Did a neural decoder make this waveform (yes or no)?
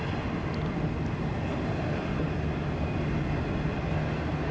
no